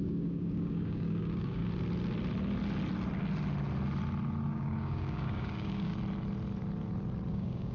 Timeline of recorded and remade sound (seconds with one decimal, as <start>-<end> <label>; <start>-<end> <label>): 0.0-1.6 remade; 1.6-4.5 recorded; 4.5-5.9 remade; 5.9-7.3 recorded; 7.3-7.7 remade